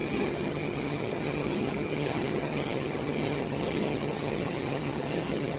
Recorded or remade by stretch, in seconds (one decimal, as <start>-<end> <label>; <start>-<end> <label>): 0.0-5.6 remade